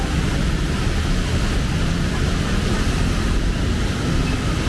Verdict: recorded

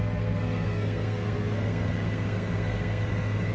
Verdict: remade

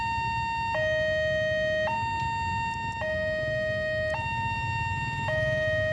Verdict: recorded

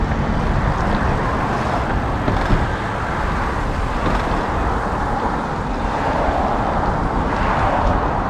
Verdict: recorded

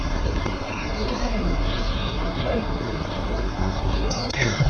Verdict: remade